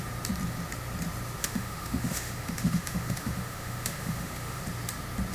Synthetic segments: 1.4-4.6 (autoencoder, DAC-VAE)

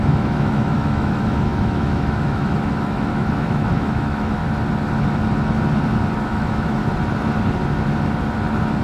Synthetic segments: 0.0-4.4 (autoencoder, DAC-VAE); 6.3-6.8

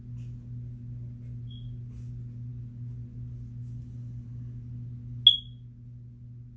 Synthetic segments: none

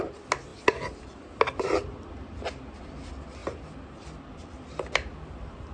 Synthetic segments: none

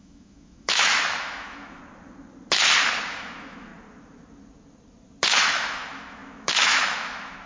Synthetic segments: 0.0-1.8 (autoencoder, DAC-VAE); 3.1-3.7; 5.4-7.5